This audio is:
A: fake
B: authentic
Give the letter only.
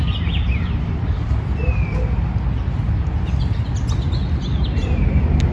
B